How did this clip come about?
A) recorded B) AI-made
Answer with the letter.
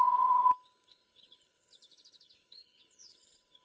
B